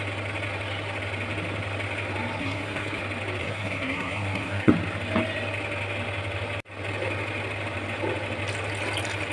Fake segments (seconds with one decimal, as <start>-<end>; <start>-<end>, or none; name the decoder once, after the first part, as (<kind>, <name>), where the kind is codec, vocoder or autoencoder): 2.4-3.0 (codec, SNAC); 3.4-4.7